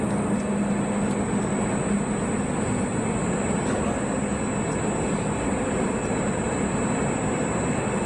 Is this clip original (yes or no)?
yes